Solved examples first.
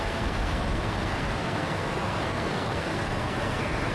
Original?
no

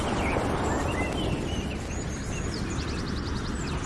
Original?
yes